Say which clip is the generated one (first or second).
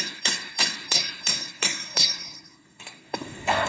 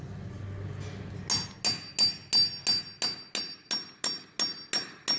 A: first